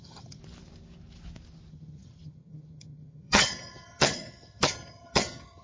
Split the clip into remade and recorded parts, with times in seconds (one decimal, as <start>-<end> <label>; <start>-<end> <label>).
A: 0.0-0.4 remade; 0.4-1.7 recorded; 1.7-5.6 remade